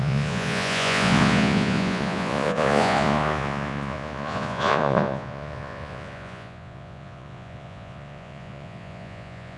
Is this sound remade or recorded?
remade